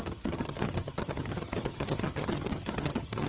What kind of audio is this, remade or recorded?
remade